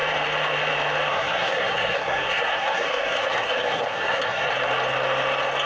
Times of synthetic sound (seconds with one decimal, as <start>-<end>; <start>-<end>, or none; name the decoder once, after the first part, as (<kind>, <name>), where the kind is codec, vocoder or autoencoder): 1.1-4.5 (codec, SNAC)